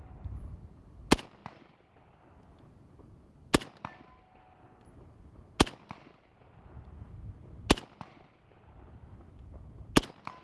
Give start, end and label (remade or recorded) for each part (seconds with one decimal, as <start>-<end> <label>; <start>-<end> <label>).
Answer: 0.0-10.4 recorded